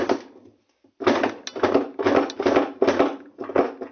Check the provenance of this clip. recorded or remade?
recorded